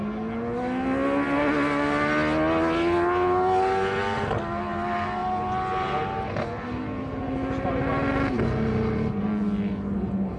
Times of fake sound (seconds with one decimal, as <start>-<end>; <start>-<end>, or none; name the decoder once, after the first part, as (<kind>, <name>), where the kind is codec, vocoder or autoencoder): none